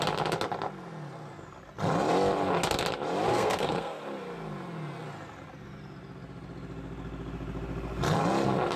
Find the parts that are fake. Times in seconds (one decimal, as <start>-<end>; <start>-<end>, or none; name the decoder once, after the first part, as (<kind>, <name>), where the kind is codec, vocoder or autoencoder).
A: 3.3-4.0 (codec, SNAC)